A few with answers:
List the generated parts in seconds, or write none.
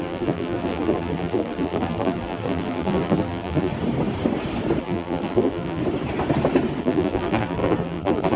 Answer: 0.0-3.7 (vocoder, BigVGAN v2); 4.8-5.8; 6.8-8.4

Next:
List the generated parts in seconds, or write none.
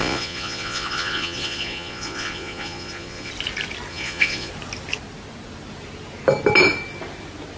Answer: 0.0-3.3 (vocoder, Vocos); 3.9-4.5